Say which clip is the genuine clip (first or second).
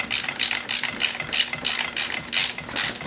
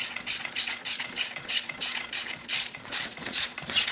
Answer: first